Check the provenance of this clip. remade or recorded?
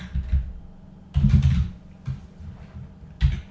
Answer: recorded